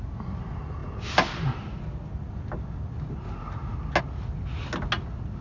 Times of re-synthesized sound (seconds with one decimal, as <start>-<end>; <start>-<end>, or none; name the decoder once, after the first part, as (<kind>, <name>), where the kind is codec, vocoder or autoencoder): none